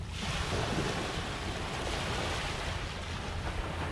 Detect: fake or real real